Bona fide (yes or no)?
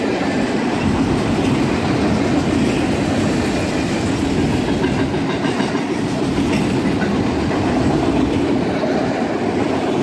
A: yes